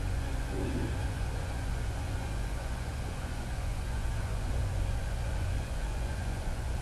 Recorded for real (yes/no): no